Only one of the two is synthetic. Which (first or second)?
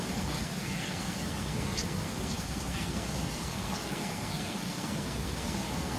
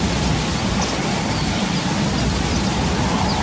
first